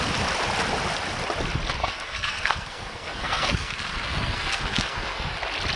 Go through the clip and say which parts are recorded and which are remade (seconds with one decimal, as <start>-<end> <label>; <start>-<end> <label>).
0.0-1.8 recorded; 1.8-5.3 remade; 5.3-5.8 recorded